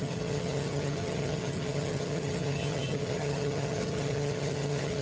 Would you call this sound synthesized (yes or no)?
yes